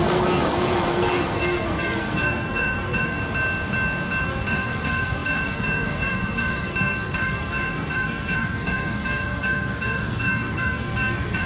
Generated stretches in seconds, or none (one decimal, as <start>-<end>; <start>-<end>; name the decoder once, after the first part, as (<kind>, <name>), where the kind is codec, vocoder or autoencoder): 0.0-3.2 (codec, SNAC); 4.2-11.5